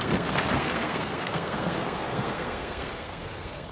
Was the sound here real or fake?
fake